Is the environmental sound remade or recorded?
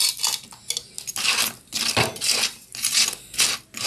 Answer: recorded